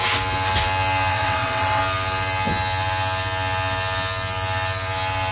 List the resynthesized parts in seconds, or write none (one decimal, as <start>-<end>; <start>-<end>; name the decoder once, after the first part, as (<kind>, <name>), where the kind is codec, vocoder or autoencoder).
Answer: 1.1-1.8 (vocoder, WaveNeXt)